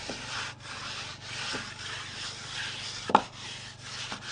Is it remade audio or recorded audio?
recorded